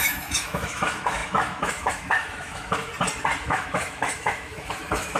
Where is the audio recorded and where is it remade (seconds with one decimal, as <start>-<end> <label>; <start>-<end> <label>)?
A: 0.0-2.9 remade; 2.9-3.4 recorded; 3.4-5.2 remade